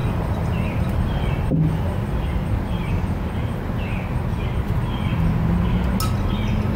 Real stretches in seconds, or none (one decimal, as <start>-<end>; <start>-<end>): 2.9-6.8